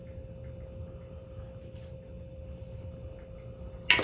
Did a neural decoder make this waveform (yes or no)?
no